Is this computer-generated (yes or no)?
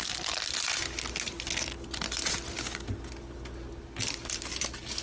no